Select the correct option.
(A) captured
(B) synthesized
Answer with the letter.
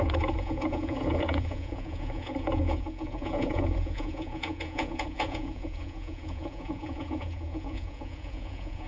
B